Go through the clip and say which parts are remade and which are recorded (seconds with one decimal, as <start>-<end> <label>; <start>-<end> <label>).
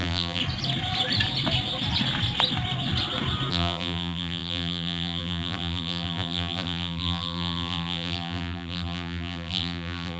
0.0-0.4 remade; 0.4-3.5 recorded; 3.5-10.2 remade